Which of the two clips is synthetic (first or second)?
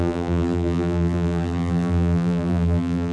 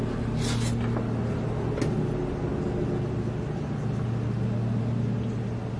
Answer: first